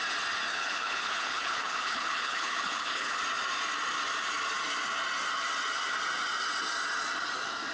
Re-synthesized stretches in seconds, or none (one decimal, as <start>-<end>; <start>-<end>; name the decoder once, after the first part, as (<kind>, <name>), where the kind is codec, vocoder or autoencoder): 0.5-3.2 (codec, HILCodec)